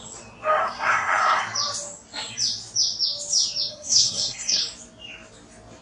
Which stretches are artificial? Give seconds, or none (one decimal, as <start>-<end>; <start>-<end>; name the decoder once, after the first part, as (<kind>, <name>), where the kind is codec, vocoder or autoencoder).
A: 0.6-1.4 (codec, SNAC); 3.7-4.6